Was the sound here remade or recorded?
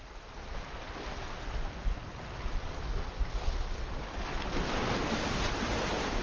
recorded